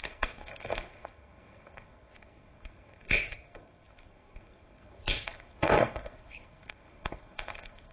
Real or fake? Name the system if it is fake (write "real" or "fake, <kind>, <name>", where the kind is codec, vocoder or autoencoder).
fake, codec, SNAC